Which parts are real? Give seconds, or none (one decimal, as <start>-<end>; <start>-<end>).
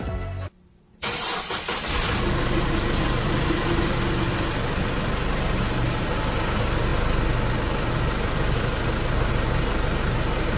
0.0-10.6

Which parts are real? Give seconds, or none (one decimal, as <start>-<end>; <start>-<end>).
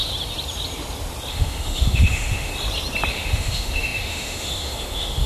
0.0-1.3; 2.5-3.1